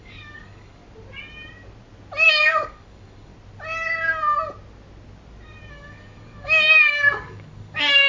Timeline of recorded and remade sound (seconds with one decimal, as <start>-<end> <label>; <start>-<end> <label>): 0.0-0.8 remade; 0.8-2.3 recorded; 2.3-3.3 remade; 3.3-5.7 recorded; 5.7-8.1 remade